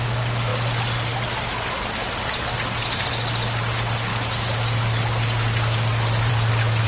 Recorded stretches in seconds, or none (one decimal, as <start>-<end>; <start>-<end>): 0.0-6.9